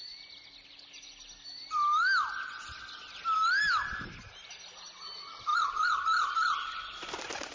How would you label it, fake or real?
real